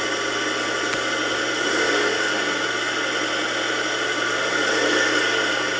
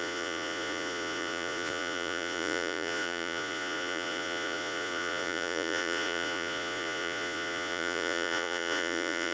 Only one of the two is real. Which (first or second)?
first